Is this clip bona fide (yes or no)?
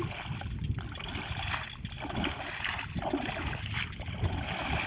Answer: yes